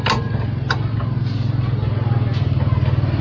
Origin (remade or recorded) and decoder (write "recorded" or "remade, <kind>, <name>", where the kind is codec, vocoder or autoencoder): recorded